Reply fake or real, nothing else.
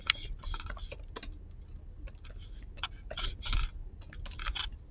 real